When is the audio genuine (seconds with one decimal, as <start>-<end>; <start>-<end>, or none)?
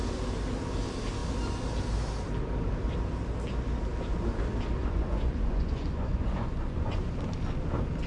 0.0-4.8; 7.1-8.1